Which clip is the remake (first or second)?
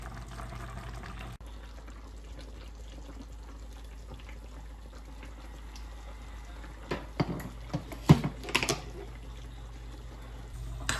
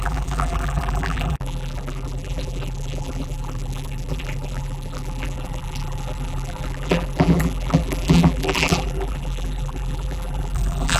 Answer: second